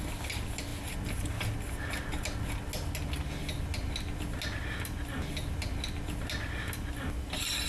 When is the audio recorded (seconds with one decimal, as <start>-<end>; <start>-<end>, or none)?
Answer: 0.0-7.7